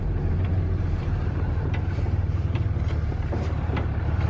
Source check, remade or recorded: remade